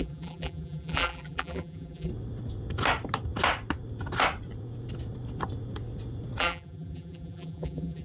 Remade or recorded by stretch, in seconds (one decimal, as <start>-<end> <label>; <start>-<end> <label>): 0.0-2.1 remade; 2.1-6.4 recorded; 6.4-8.0 remade